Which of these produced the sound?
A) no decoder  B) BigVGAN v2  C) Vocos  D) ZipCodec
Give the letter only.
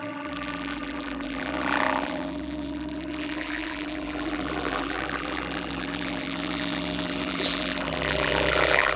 B